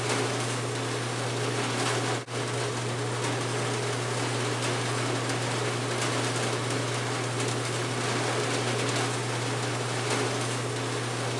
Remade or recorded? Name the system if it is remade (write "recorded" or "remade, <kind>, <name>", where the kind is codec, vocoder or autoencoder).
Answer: recorded